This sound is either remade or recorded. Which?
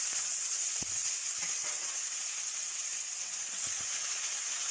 remade